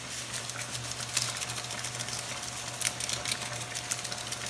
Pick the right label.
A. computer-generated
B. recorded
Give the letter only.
B